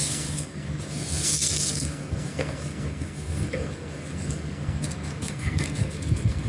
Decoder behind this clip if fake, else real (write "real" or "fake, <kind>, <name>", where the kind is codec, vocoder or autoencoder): fake, codec, SNAC